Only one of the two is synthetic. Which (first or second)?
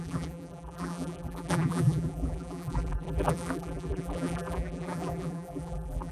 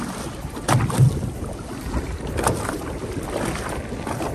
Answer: first